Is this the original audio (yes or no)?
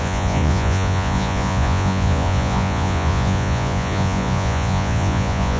no